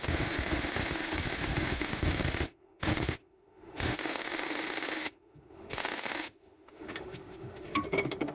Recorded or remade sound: remade